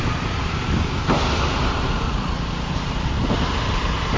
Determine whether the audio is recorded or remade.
remade